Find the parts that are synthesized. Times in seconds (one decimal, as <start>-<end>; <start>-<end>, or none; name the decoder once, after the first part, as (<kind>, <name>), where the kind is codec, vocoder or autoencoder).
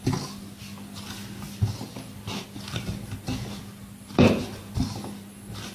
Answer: none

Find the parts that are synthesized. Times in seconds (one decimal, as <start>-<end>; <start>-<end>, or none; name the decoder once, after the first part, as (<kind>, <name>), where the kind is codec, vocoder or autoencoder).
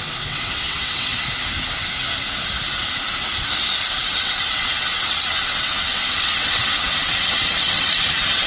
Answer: 0.0-1.1 (vocoder, WaveNeXt); 4.1-8.5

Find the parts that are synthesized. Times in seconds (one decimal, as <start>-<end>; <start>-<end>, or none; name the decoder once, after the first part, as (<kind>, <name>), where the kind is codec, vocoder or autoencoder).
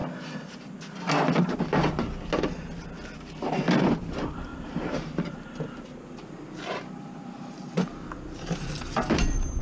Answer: 4.5-9.6 (vocoder, BigVGAN v2)